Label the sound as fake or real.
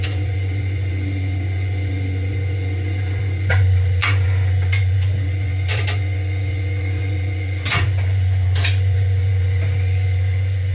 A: fake